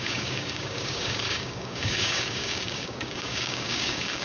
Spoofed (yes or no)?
yes